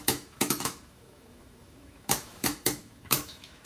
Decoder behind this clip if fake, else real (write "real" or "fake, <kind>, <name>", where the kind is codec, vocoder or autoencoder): fake, autoencoder, DAC-VAE